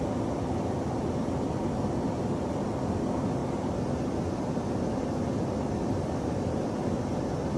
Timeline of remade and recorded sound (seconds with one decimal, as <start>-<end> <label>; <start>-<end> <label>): 0.0-3.4 recorded; 3.4-4.6 remade; 4.6-7.6 recorded